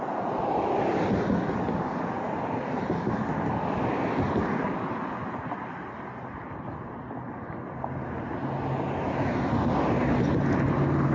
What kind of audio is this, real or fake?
real